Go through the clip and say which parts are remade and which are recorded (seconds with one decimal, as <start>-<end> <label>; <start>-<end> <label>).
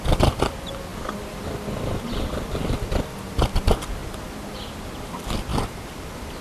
0.0-0.9 recorded; 0.9-1.8 remade; 1.8-4.0 recorded; 4.0-4.8 remade; 4.8-6.4 recorded